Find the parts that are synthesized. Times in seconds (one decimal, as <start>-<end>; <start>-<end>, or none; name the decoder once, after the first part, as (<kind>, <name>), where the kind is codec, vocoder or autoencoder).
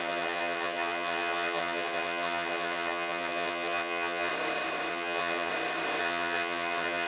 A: 0.0-4.3 (vocoder, HiFi-GAN); 4.9-5.5; 6.0-7.1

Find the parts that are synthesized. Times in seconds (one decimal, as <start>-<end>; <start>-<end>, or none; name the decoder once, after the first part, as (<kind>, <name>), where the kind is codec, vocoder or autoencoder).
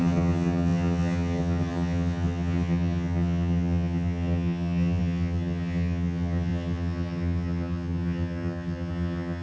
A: 0.0-9.4 (vocoder, HiFi-GAN)